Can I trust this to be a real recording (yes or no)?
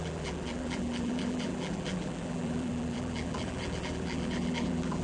no